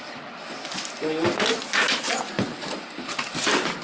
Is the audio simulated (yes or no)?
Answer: no